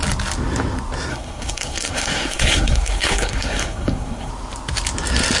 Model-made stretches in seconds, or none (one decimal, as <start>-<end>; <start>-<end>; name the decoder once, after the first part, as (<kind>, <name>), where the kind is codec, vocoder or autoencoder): 1.1-4.3 (codec, SNAC)